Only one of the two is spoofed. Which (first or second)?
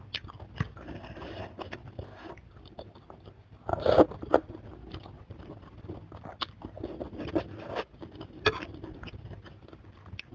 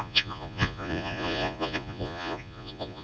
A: second